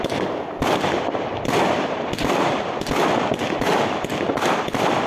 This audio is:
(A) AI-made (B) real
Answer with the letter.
B